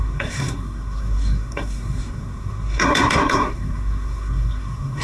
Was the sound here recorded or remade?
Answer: remade